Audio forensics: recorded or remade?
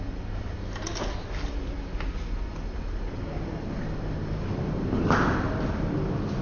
recorded